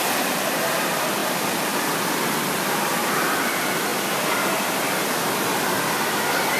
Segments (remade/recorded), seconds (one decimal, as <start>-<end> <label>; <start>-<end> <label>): 0.0-6.6 recorded